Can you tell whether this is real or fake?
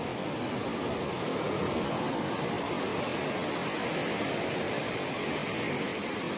real